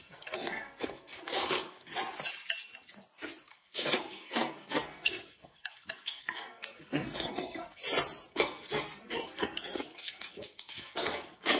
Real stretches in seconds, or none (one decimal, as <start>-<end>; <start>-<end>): 1.9-3.5; 7.8-8.3